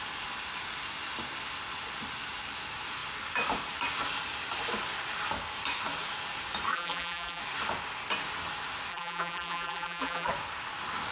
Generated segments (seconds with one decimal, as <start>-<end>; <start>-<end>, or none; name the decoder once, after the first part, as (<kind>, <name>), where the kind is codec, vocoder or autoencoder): 6.7-7.4 (vocoder, BigVGAN v2); 8.9-10.3